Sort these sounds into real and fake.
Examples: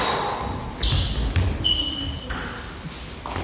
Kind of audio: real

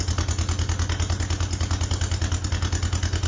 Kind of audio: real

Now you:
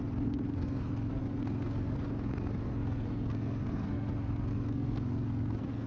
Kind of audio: fake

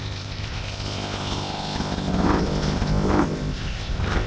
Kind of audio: fake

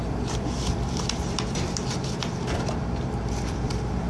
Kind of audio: fake